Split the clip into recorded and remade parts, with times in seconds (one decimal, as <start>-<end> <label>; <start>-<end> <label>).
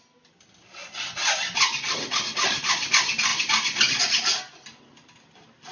0.0-5.7 recorded